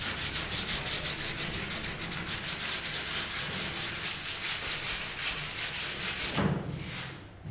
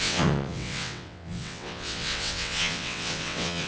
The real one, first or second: first